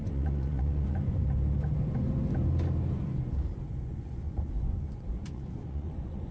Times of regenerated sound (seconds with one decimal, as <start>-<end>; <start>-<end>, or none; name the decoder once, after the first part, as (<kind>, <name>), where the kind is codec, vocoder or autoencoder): 0.0-1.2 (vocoder, Vocos); 3.7-6.3